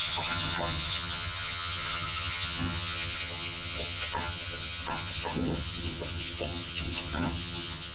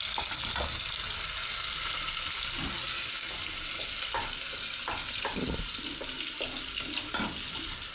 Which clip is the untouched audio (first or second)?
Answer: second